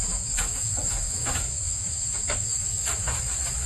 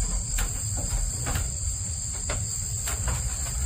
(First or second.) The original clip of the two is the second